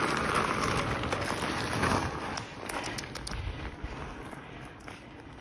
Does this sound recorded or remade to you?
recorded